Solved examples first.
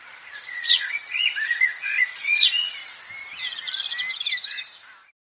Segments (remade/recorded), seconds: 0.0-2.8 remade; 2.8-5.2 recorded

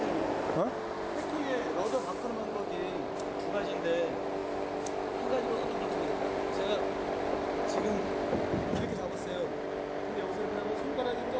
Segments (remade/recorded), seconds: 0.0-11.4 recorded

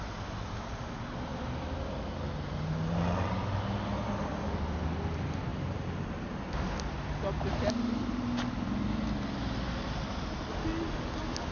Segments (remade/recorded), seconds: 0.0-5.5 recorded; 5.5-6.4 remade; 6.4-11.5 recorded

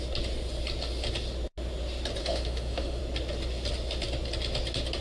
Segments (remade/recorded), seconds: 0.0-2.2 recorded; 2.2-3.0 remade; 3.0-5.0 recorded

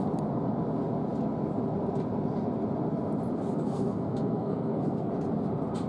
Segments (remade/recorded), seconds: 0.0-3.5 recorded; 3.5-5.1 remade; 5.1-5.9 recorded

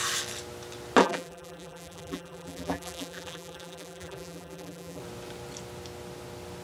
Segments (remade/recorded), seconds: 0.0-1.0 recorded; 1.0-5.0 remade; 5.0-6.6 recorded

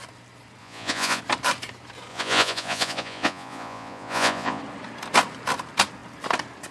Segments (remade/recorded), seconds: 0.0-0.6 recorded; 0.6-1.2 remade; 1.2-2.1 recorded; 2.1-4.6 remade; 4.6-6.7 recorded